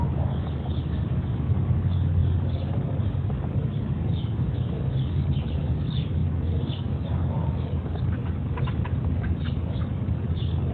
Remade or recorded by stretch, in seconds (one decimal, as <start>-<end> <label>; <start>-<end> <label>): 0.0-10.7 remade